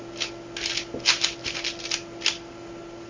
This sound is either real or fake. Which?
real